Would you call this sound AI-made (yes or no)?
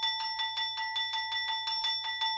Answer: no